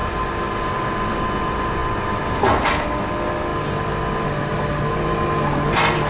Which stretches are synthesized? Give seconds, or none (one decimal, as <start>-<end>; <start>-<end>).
none